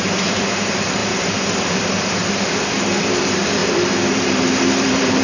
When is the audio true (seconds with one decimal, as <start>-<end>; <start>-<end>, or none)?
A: 2.2-3.0